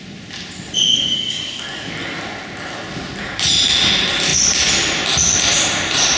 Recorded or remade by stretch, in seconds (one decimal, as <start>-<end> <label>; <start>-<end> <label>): 0.0-0.9 recorded; 0.9-1.9 remade; 1.9-6.2 recorded